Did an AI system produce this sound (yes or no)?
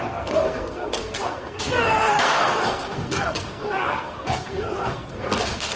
yes